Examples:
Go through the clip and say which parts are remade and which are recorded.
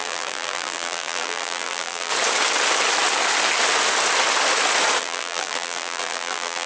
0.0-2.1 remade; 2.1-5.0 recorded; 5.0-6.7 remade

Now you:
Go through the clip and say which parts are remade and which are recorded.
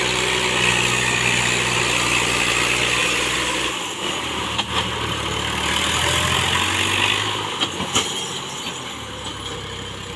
0.0-3.0 recorded; 3.0-4.9 remade; 4.9-10.2 recorded